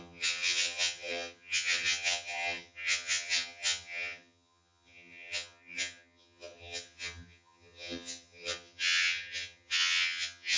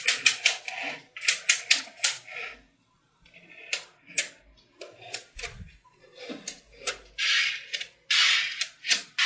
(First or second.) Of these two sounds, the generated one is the first